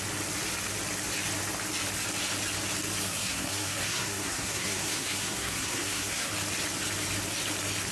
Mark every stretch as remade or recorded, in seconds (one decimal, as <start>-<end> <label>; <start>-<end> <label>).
0.0-3.0 recorded; 3.0-6.3 remade; 6.3-7.9 recorded